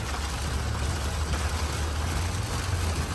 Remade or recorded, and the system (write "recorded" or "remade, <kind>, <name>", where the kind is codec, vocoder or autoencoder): recorded